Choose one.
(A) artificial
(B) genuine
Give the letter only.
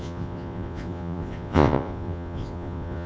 A